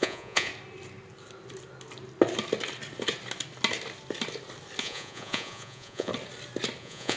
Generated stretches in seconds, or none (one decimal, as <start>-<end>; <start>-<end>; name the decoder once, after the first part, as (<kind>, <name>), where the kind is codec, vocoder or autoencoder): 0.0-0.5 (vocoder, Vocos); 4.8-6.1; 6.8-7.2